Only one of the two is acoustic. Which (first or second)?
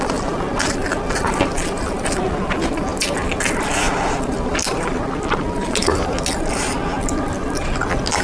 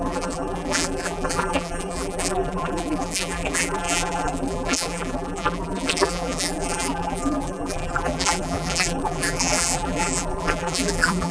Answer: first